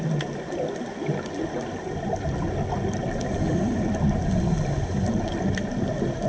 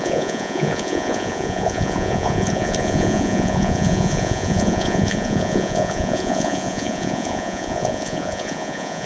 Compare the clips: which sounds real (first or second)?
first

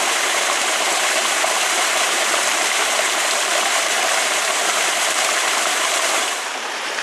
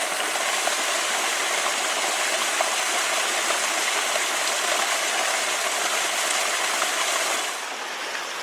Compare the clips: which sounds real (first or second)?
second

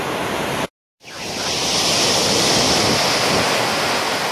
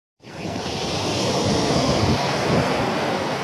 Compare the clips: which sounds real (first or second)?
first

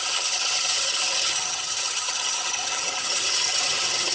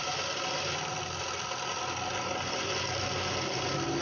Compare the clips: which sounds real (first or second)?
second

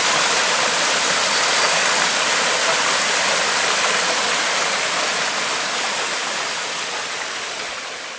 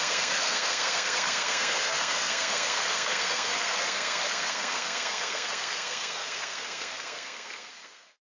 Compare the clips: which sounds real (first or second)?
first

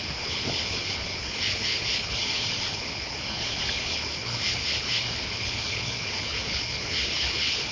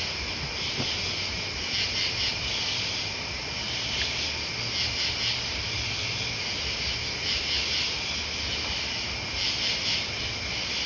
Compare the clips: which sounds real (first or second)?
second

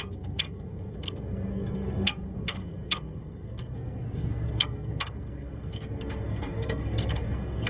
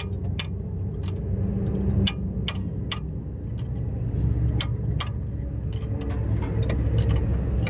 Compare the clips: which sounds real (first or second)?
second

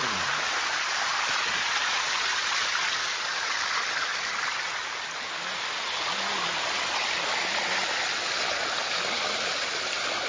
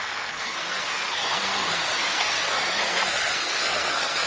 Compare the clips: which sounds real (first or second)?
first